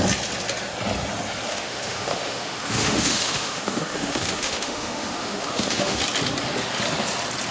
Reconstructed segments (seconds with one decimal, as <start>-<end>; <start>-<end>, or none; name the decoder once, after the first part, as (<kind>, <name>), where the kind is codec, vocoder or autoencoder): 1.5-6.0 (autoencoder, DAC-VAE)